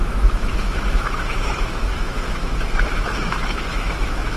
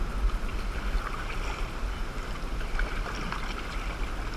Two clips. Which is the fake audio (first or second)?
first